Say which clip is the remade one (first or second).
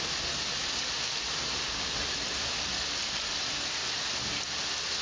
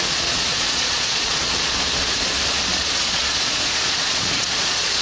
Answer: second